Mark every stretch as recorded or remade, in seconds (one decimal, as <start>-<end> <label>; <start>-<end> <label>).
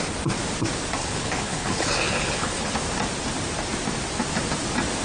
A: 0.0-1.0 recorded; 1.0-2.7 remade; 2.7-5.0 recorded